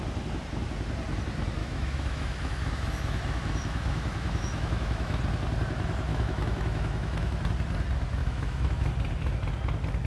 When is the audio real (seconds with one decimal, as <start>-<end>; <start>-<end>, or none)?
0.0-1.6; 5.2-6.1; 7.4-8.2; 8.9-10.1